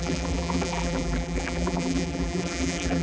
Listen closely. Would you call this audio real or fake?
fake